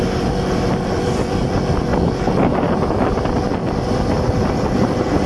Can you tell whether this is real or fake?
real